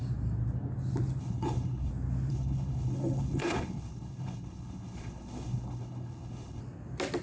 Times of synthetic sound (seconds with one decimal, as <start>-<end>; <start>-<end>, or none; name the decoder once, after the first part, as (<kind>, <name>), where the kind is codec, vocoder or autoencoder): 1.2-1.9 (codec, HILCodec); 2.3-6.6